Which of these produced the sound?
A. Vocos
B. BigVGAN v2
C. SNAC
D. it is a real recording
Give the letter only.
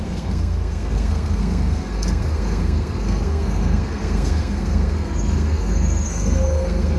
C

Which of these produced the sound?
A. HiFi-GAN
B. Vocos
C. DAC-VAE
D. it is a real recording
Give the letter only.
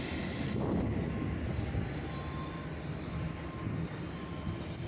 D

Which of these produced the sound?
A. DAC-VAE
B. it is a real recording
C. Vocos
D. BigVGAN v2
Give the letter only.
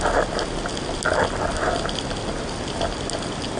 B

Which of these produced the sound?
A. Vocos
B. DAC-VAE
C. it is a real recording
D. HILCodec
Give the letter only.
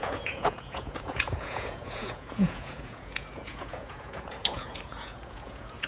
A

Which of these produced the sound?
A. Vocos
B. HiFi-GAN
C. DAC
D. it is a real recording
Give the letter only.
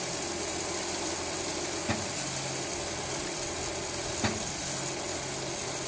D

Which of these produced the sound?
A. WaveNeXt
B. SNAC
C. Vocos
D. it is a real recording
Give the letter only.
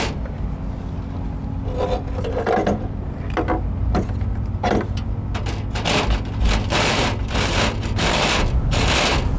D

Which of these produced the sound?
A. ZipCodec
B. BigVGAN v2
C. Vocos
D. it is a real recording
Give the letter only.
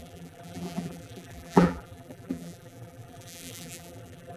B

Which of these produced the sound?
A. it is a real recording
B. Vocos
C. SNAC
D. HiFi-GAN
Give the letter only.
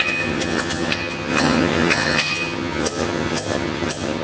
D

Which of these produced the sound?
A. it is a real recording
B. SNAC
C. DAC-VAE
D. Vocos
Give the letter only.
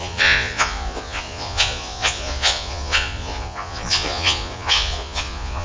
D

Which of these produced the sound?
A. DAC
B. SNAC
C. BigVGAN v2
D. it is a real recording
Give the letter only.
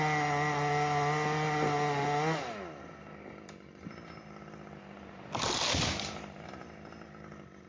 D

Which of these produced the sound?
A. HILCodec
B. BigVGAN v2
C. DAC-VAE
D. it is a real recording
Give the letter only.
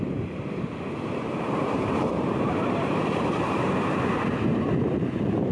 B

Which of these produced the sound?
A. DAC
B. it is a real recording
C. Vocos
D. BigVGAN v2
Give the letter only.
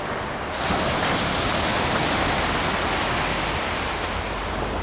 B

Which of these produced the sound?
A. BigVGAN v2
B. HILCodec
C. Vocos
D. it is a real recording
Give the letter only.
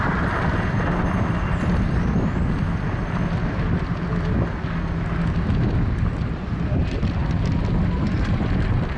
D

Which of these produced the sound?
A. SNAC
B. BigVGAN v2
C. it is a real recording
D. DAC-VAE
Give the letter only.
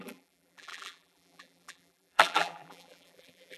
B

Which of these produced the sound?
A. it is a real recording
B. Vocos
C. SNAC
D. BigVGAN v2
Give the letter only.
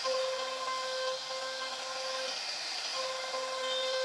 A